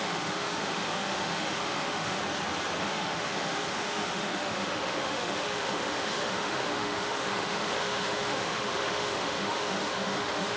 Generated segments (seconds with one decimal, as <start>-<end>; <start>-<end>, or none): 0.0-2.2; 2.8-10.6